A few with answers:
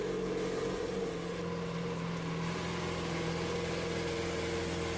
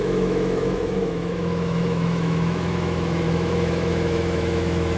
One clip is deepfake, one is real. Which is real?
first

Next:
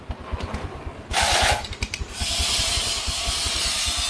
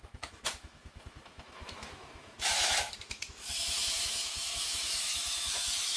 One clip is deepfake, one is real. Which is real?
first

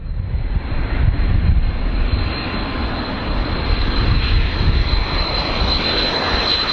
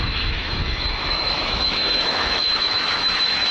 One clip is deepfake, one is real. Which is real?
first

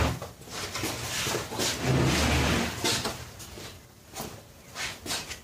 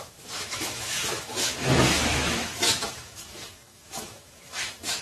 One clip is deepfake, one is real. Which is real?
first